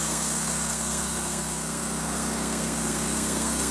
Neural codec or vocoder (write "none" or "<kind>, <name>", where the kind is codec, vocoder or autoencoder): codec, SNAC